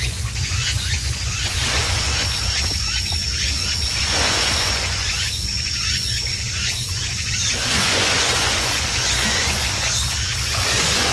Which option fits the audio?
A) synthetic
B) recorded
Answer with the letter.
A